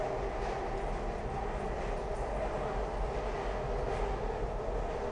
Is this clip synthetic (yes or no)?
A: no